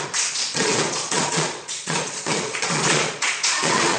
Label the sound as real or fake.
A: fake